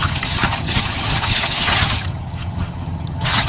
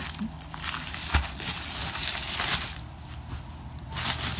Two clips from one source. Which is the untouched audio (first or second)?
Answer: second